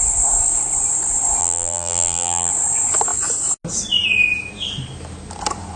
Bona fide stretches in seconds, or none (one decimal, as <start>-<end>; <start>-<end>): 0.0-1.4; 2.5-5.8